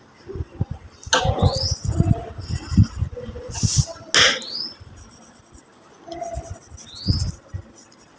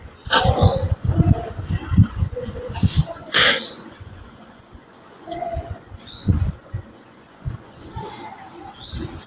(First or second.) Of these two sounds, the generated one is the second